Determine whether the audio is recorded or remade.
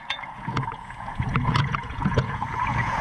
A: remade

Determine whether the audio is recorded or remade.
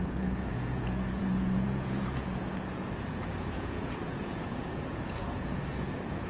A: remade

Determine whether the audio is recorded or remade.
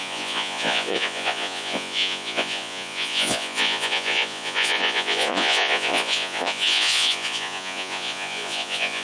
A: remade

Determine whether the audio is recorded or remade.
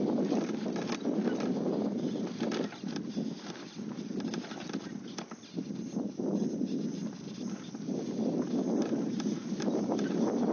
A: recorded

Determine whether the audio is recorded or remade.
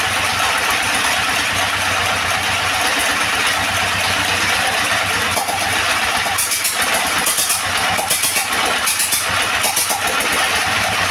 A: recorded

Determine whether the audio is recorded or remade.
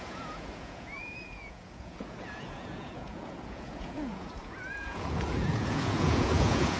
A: remade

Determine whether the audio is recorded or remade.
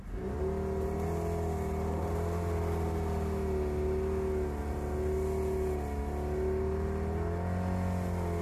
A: recorded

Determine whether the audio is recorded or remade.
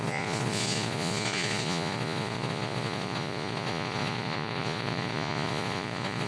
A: remade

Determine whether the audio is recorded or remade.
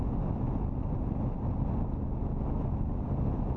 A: recorded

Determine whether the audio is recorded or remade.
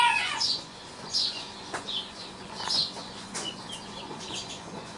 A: remade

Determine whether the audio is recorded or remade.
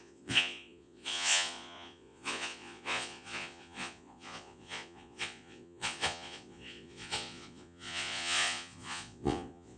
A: remade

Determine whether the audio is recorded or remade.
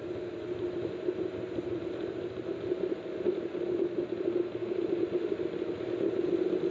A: recorded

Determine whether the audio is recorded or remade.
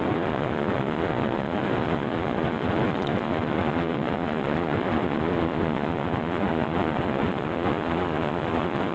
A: remade